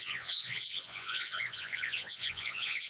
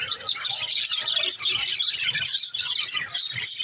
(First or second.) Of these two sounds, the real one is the second